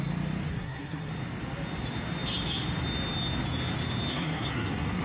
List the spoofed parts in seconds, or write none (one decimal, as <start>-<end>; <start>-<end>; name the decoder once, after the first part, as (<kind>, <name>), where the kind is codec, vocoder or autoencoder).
0.5-1.1 (codec, SNAC); 4.1-5.0

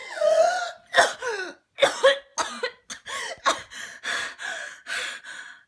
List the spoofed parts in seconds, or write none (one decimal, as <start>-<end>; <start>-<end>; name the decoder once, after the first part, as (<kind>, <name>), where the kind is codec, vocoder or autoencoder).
0.0-0.6 (vocoder, WaveNeXt)

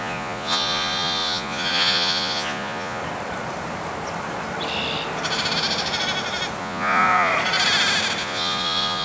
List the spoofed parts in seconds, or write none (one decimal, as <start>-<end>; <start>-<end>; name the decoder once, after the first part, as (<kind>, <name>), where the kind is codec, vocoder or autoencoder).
0.0-3.0 (vocoder, Vocos); 6.6-7.3; 8.2-9.0